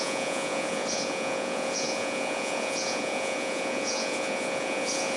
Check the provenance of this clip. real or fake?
fake